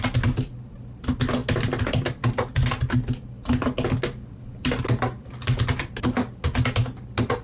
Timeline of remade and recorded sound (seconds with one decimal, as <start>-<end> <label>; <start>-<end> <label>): 0.0-7.4 recorded